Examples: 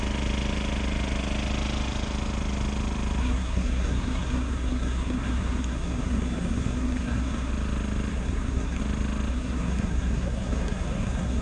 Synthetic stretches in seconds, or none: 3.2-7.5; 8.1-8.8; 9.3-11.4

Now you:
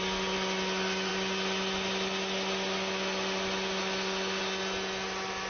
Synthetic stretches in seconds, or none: none